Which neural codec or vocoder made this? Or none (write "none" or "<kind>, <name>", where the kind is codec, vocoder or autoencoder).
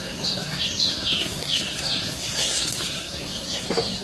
codec, SNAC